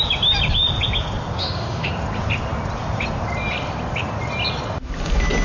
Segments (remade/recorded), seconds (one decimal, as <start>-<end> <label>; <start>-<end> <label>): 0.0-1.4 recorded; 1.4-1.9 remade; 1.9-5.4 recorded